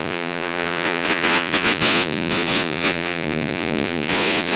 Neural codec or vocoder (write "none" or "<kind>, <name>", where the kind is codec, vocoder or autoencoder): vocoder, Vocos